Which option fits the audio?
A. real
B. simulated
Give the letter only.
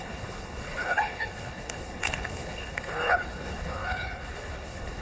B